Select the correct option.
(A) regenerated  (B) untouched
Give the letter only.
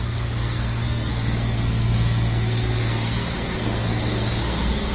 A